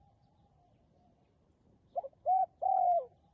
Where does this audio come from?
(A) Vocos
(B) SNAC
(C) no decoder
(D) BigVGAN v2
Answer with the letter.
D